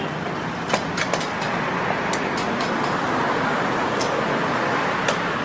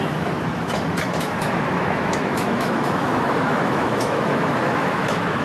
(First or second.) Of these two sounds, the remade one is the second